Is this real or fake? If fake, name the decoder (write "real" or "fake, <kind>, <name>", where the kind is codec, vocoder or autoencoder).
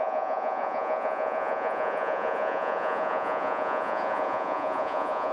fake, vocoder, Vocos